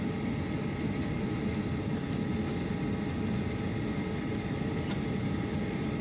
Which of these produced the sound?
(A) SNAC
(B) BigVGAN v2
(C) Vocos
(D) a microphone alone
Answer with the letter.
D